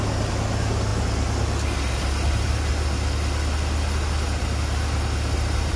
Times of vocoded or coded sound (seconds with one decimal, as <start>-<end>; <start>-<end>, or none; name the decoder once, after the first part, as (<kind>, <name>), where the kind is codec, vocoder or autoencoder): none